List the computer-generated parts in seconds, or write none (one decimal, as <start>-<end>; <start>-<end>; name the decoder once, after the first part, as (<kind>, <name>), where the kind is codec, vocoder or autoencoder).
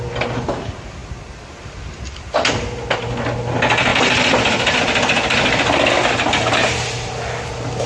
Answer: none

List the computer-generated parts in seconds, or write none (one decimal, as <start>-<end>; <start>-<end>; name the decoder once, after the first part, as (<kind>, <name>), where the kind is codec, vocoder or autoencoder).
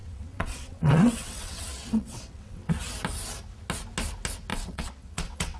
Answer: 0.0-2.7 (vocoder, WaveNeXt); 4.5-5.6